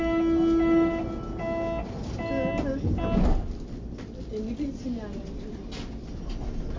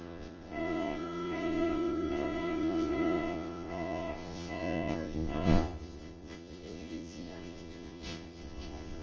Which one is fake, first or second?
second